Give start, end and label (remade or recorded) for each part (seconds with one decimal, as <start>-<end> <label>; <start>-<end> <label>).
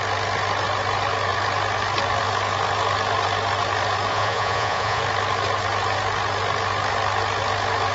0.0-4.1 recorded; 4.1-5.0 remade; 5.0-7.9 recorded